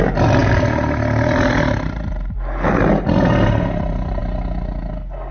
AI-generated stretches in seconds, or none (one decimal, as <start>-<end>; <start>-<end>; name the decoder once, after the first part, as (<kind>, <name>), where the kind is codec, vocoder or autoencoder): none